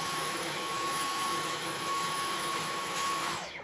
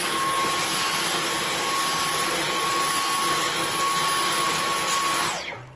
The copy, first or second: first